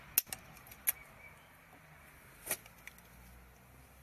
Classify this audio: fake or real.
real